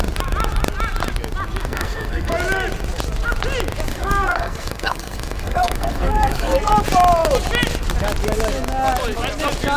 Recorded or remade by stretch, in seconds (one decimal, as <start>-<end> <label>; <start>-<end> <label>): 0.0-1.6 recorded; 1.6-2.3 remade; 2.3-3.9 recorded; 3.9-6.7 remade; 6.7-9.8 recorded